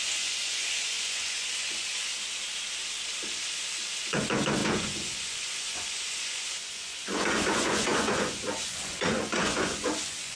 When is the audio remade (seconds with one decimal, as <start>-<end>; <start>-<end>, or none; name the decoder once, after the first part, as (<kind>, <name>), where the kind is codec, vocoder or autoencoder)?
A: 0.0-2.1 (vocoder, Vocos); 4.0-10.4